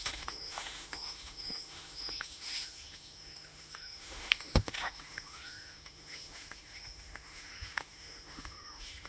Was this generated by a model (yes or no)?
yes